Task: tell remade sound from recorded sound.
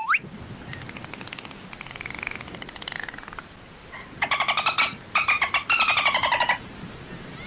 recorded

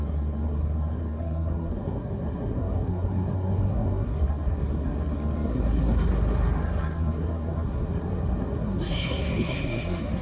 remade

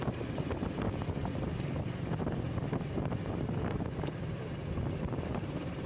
recorded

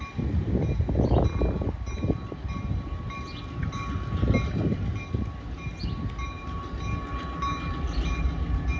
recorded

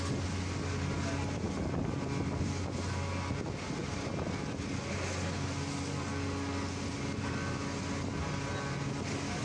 recorded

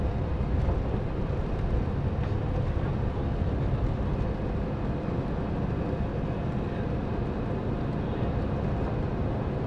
recorded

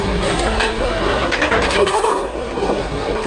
remade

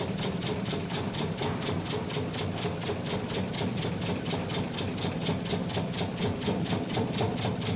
recorded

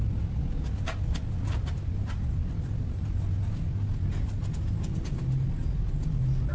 recorded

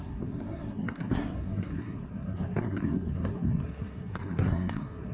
remade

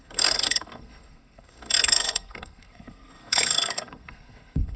remade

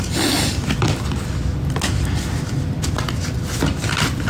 recorded